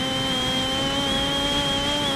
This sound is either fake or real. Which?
real